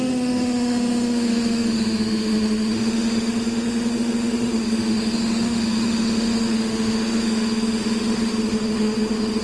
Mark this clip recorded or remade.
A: remade